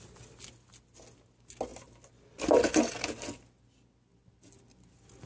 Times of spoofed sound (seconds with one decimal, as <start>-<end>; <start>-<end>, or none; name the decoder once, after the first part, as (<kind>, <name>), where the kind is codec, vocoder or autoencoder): none